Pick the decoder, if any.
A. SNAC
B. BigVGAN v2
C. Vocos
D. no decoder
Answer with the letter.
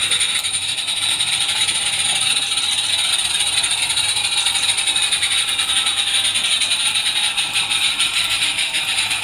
D